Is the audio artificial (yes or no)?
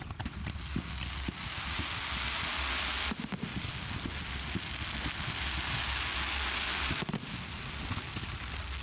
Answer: no